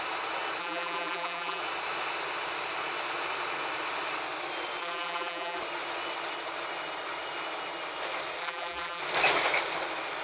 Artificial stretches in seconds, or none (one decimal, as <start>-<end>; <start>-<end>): 0.6-1.6; 4.8-5.6; 8.4-9.0